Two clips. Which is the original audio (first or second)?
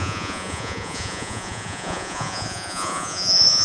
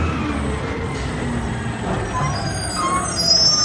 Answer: second